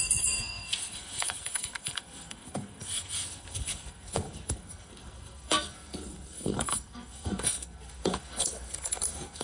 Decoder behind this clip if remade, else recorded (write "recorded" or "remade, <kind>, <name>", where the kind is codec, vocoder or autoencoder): remade, codec, SNAC